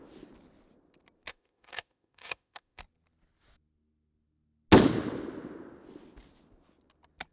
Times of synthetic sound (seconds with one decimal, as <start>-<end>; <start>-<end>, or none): 1.3-2.8